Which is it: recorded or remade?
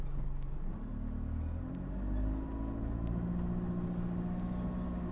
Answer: recorded